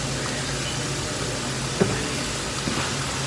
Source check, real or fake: real